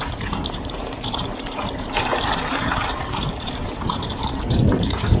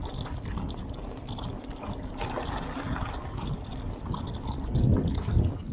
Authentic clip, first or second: second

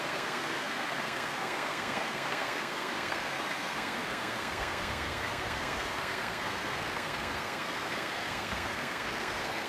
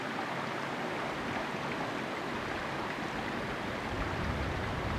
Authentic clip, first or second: second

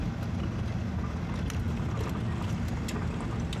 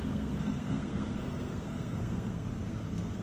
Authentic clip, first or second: first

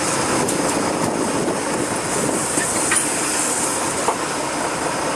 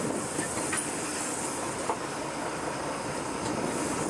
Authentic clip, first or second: second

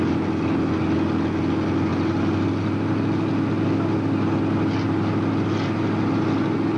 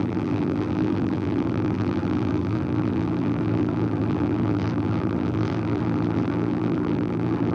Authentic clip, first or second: first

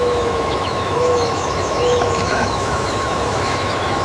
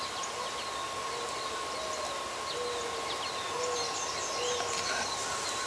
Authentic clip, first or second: second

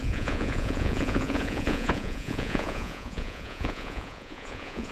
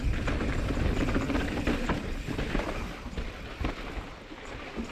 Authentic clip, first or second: second